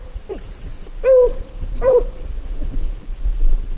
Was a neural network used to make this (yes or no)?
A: yes